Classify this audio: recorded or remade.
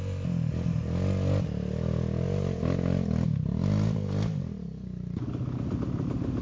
recorded